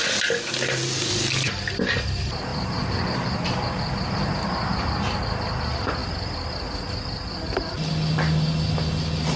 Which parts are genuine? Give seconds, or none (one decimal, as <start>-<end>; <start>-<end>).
0.0-2.5; 5.2-9.4